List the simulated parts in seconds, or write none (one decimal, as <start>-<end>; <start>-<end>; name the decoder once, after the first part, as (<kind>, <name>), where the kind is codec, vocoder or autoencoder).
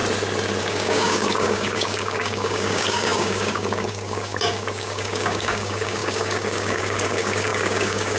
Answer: 0.6-8.2 (codec, DAC)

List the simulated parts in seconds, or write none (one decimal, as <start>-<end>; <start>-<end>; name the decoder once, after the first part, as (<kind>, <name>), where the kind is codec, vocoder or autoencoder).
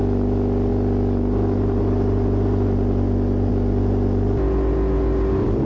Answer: none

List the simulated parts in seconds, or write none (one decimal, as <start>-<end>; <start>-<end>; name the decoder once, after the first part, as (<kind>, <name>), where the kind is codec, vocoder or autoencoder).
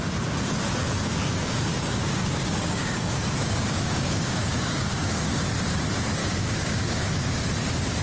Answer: 0.8-5.4 (codec, DAC); 6.2-7.4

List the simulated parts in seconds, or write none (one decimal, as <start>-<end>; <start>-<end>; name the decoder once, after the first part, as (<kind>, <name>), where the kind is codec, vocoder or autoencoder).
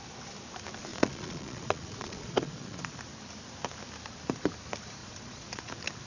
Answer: 0.9-2.9 (vocoder, Vocos); 5.0-5.6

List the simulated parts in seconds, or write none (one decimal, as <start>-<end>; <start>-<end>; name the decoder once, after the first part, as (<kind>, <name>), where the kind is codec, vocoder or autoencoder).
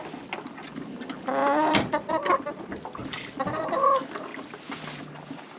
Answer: 1.4-2.1 (vocoder, BigVGAN v2); 4.3-5.0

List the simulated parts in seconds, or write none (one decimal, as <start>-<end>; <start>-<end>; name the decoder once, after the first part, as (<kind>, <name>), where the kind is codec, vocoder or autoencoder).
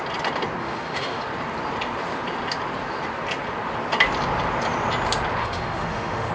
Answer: 0.6-1.2 (autoencoder, DAC-VAE); 5.4-6.3